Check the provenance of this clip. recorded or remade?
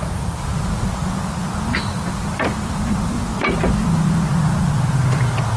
recorded